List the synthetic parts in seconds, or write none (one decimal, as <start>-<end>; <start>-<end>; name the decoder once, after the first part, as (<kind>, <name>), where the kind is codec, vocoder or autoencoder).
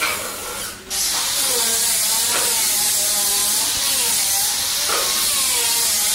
3.4-4.3 (vocoder, BigVGAN v2)